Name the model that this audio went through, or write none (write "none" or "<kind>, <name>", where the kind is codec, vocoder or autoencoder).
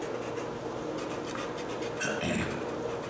none